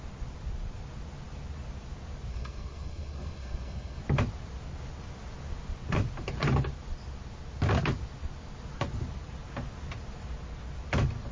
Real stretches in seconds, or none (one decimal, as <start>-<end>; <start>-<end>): 0.0-2.3; 4.0-11.3